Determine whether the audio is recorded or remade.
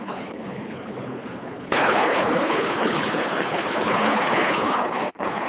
remade